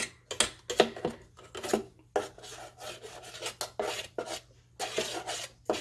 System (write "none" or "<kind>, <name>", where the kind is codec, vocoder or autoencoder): none